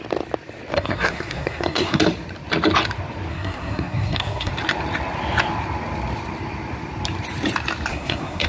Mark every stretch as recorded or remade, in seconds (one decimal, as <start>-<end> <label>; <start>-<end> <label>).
0.0-0.7 recorded; 0.7-2.0 remade; 2.0-3.3 recorded; 3.3-4.5 remade; 4.5-7.9 recorded; 7.9-8.5 remade